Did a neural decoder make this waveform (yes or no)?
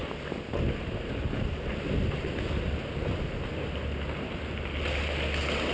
no